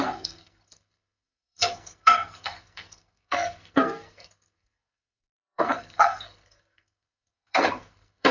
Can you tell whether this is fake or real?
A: fake